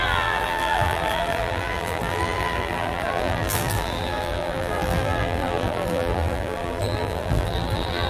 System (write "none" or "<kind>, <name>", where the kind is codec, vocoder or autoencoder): vocoder, BigVGAN v2